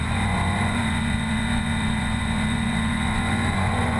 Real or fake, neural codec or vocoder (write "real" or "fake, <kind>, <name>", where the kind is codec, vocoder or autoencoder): fake, vocoder, Vocos